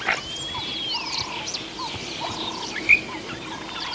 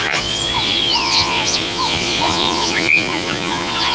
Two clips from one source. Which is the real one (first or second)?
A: first